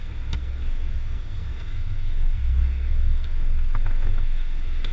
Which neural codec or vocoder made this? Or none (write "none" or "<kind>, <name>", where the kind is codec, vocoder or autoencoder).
codec, SNAC